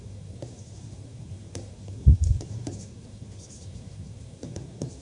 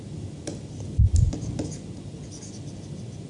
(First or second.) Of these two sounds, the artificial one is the first